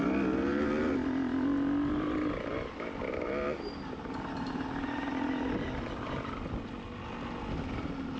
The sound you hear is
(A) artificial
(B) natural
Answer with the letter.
B